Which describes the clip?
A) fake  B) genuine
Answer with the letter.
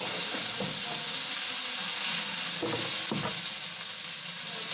B